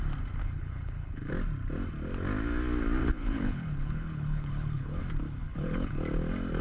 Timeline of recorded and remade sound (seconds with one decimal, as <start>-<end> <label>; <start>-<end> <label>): 0.0-0.4 recorded; 0.4-1.3 remade; 1.3-3.0 recorded; 3.0-5.0 remade; 5.0-5.4 recorded; 5.4-5.9 remade; 5.9-6.6 recorded